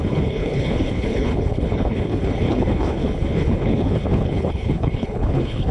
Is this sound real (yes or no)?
no